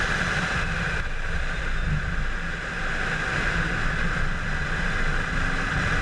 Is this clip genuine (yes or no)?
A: yes